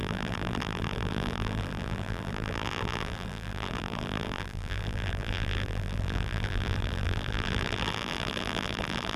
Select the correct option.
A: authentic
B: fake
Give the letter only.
B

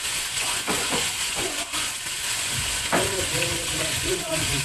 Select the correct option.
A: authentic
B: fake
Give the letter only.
B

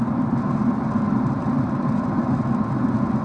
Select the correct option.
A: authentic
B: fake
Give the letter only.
A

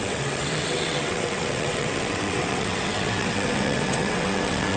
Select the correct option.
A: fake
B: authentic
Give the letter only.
A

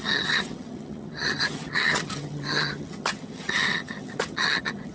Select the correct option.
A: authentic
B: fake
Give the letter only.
B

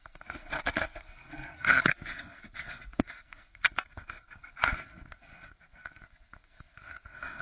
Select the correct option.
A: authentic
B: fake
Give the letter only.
B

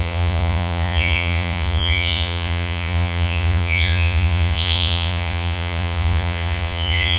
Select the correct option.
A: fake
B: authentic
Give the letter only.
A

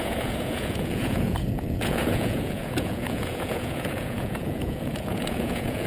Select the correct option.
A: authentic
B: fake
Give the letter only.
B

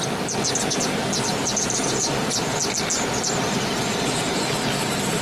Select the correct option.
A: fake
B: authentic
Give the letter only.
B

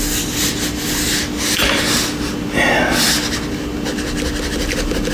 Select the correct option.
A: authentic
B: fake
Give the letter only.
A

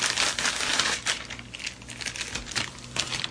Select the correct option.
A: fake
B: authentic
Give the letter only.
B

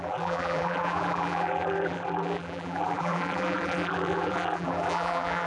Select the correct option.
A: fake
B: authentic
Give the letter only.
A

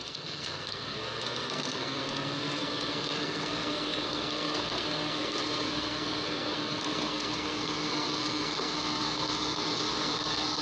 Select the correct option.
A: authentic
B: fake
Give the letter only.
B